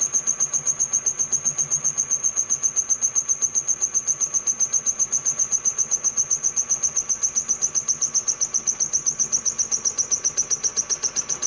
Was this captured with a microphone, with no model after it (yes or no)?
yes